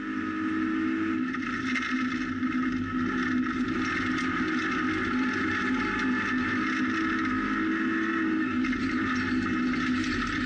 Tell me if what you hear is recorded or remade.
recorded